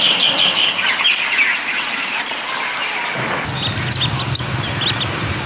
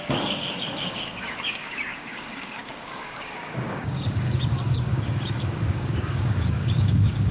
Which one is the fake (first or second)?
second